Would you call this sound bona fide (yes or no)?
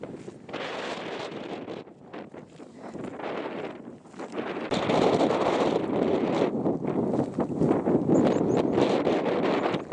yes